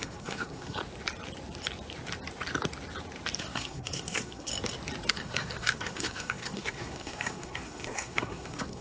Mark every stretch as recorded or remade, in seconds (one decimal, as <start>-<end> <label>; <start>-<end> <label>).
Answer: 0.0-0.8 remade; 0.8-3.4 recorded; 3.4-4.5 remade; 4.5-5.1 recorded; 5.1-8.8 remade